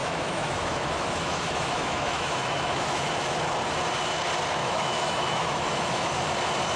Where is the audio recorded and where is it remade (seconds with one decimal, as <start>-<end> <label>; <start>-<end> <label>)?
0.0-3.1 remade; 3.1-4.6 recorded; 4.6-6.1 remade; 6.1-6.8 recorded